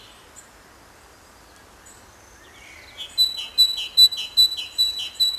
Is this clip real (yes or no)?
yes